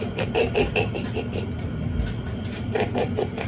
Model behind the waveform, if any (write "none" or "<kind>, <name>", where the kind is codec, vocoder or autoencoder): none